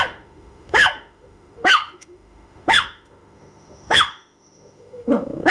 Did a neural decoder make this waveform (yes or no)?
yes